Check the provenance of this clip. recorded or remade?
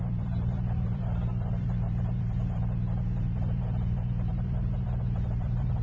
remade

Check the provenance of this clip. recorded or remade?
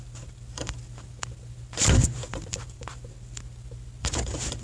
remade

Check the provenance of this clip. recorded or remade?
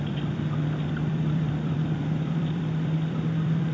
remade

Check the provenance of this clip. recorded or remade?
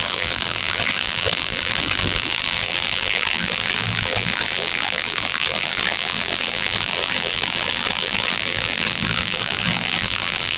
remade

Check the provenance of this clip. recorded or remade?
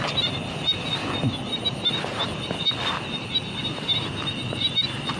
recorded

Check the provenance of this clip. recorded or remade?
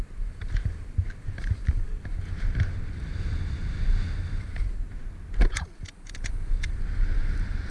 recorded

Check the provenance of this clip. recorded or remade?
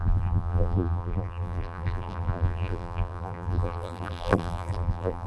remade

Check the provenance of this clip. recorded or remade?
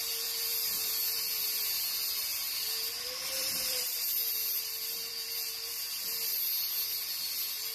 remade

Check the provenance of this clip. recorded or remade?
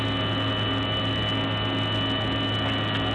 recorded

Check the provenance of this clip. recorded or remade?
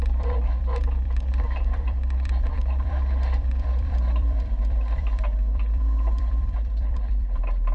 remade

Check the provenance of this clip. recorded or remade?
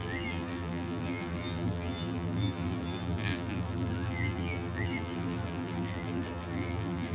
remade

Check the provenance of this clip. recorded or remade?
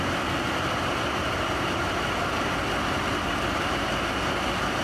recorded